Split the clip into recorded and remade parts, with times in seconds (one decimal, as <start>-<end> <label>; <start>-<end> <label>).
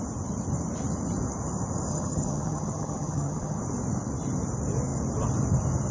0.0-1.9 recorded; 1.9-3.6 remade; 3.6-5.9 recorded